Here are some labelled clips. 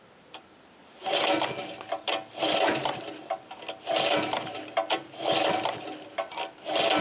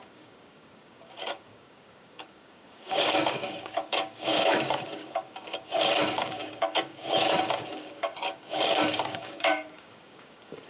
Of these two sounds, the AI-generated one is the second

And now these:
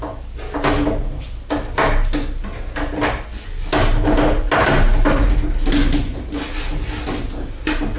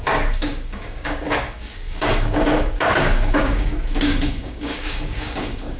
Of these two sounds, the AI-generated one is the second